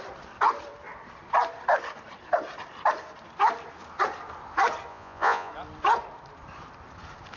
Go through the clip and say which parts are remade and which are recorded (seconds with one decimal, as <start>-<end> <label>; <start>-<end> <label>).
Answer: 0.0-4.9 recorded; 4.9-5.5 remade; 5.5-7.4 recorded